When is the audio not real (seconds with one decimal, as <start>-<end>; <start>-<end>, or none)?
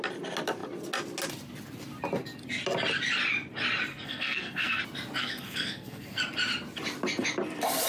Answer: 3.9-4.8; 5.2-6.2